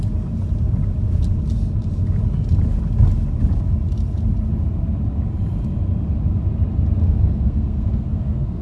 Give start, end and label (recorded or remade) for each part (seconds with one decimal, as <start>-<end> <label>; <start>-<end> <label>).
0.0-7.0 recorded; 7.0-8.6 remade